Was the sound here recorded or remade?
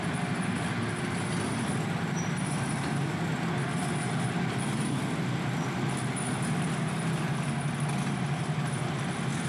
recorded